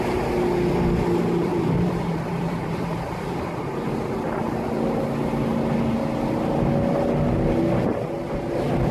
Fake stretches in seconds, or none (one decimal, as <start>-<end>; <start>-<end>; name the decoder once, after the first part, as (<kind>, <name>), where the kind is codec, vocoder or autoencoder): 1.5-3.6 (vocoder, BigVGAN v2)